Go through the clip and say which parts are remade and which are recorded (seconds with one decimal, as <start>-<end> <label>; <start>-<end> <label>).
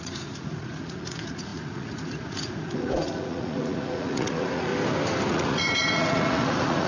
0.0-4.7 remade; 4.7-5.3 recorded; 5.3-6.9 remade